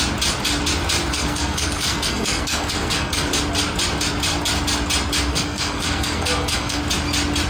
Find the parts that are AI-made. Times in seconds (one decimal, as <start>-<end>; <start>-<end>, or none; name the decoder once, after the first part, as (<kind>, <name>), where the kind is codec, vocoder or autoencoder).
1.1-3.3 (codec, SNAC); 5.3-6.8

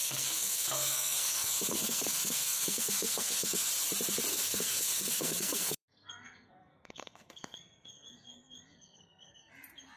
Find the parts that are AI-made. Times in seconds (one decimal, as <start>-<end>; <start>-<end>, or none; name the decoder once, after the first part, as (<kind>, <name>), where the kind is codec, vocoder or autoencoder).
0.0-3.7 (codec, SNAC); 4.3-9.5

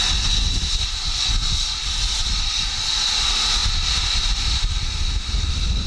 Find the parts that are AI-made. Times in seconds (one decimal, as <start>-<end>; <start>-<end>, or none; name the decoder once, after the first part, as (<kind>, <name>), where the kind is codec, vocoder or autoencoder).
none

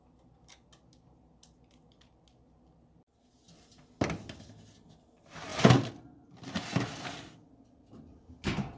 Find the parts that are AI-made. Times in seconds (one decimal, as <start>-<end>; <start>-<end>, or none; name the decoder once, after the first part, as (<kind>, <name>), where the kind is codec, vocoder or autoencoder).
none

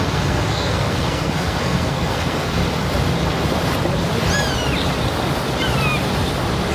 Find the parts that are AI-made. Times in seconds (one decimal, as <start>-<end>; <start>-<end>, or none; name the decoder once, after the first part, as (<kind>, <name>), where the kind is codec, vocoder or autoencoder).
0.0-2.6 (codec, SNAC)

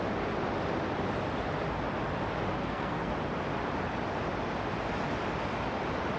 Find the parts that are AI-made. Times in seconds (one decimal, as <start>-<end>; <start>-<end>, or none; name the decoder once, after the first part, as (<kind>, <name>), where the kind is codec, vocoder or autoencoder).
2.6-3.1 (codec, SNAC)

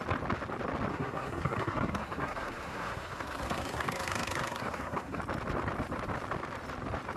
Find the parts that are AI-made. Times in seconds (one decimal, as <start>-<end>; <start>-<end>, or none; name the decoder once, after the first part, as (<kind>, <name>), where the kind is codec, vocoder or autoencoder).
0.9-5.2 (codec, SNAC)